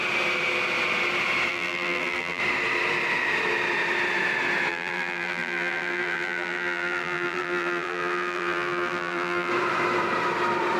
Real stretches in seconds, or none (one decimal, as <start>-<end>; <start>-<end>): 0.0-1.5; 2.4-4.7; 9.5-10.8

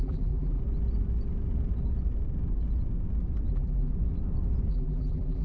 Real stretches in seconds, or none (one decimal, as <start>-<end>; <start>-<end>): 0.6-3.5; 3.9-4.7

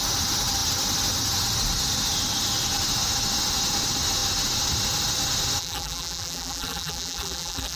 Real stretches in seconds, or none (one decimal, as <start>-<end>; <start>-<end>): 0.0-5.6

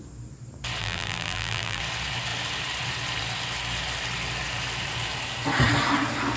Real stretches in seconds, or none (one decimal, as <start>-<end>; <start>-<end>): 0.0-0.8; 1.8-6.4

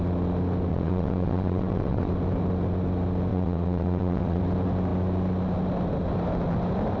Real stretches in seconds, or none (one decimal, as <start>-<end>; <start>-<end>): 0.0-0.7; 2.1-3.3; 4.4-7.0